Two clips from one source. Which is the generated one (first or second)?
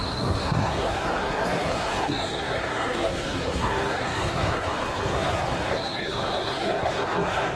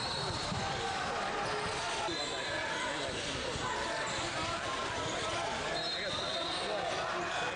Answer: first